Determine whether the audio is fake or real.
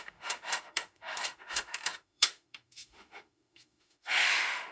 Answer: fake